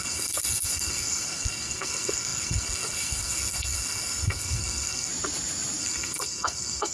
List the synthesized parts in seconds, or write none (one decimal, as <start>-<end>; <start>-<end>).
0.0-5.1; 5.8-6.9